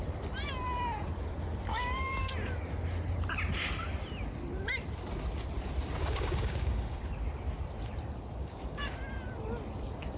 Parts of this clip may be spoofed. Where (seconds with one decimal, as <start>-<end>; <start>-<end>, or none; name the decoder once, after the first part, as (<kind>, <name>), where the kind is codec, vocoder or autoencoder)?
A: 1.7-2.3 (codec, DAC); 6.0-7.0; 8.4-9.0